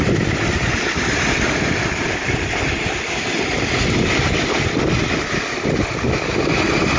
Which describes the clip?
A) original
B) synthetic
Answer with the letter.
B